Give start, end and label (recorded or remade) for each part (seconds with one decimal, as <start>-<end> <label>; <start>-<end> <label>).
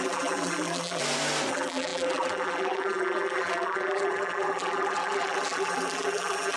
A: 0.0-1.0 remade; 1.0-1.5 recorded; 1.5-6.6 remade